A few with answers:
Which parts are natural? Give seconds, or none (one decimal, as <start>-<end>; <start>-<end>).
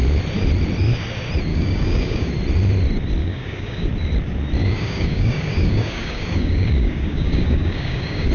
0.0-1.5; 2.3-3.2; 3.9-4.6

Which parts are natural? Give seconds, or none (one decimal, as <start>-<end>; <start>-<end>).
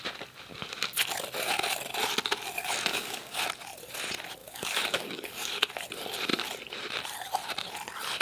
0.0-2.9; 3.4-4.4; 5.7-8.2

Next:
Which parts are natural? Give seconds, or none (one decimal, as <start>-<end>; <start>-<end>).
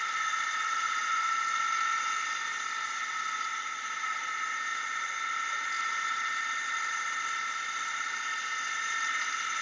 0.0-9.6